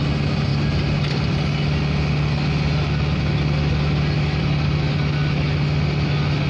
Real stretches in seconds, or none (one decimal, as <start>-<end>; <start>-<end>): 0.0-6.5